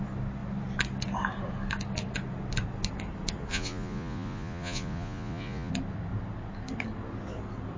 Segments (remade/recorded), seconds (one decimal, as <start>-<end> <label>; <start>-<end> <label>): 0.0-3.5 recorded; 3.5-5.7 remade; 5.7-7.8 recorded